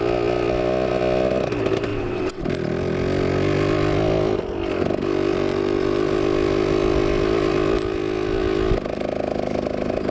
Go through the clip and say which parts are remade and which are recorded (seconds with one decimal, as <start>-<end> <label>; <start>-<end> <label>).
0.0-1.9 recorded; 1.9-2.4 remade; 2.4-10.1 recorded